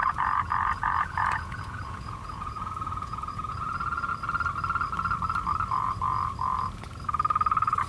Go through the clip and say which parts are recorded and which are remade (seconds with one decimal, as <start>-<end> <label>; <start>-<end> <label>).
0.0-4.1 remade; 4.1-7.9 recorded